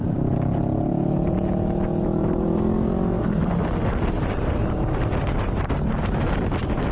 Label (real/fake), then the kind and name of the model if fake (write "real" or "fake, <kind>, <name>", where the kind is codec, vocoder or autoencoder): real